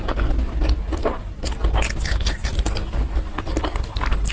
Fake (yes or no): no